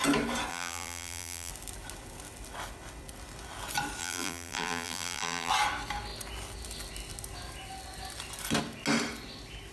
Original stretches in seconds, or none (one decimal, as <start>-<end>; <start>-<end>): 0.0-0.5; 1.5-4.0; 5.5-9.7